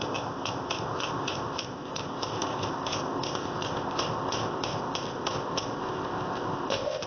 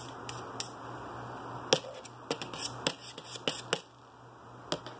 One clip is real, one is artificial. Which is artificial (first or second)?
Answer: first